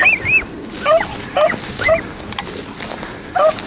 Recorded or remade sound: recorded